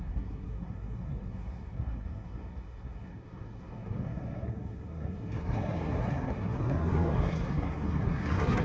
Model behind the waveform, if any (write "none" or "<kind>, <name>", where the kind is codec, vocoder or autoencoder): codec, SNAC